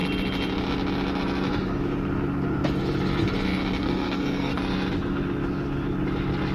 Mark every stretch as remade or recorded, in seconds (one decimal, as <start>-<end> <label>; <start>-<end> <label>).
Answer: 0.0-3.8 recorded; 3.8-4.6 remade; 4.6-6.5 recorded